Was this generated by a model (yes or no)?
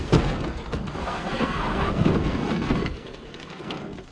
yes